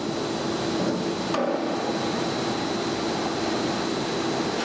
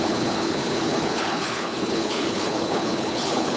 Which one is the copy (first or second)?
second